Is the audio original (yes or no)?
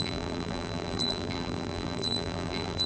no